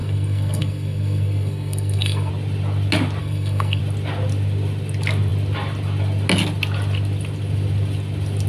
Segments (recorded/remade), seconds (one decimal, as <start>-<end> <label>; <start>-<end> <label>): 0.0-2.3 remade; 2.3-3.2 recorded; 3.2-3.8 remade; 3.8-8.5 recorded